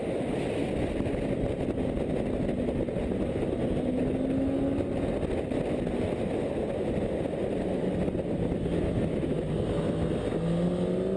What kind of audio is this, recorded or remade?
recorded